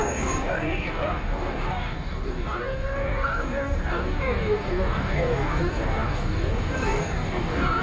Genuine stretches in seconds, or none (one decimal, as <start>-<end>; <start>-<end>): none